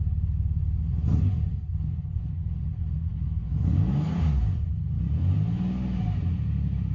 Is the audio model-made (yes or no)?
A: no